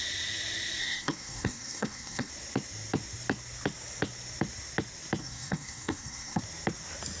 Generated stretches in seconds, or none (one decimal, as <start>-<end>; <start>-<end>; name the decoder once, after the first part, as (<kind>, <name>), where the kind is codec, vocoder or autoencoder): 0.8-2.3 (codec, SNAC); 5.2-6.4